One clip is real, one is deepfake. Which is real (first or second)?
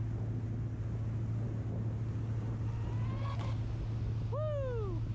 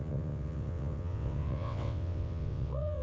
first